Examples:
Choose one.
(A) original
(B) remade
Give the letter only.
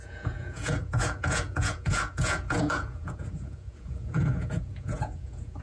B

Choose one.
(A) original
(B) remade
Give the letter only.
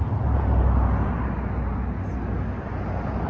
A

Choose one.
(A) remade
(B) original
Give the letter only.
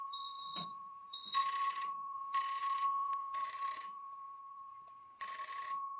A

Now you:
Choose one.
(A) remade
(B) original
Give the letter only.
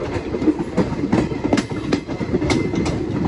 B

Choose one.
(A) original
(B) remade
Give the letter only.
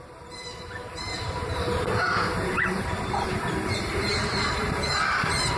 B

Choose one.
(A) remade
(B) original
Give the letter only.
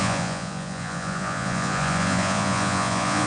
A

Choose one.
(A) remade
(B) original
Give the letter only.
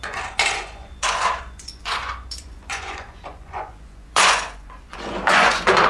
A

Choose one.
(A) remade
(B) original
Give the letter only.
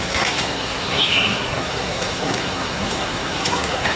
A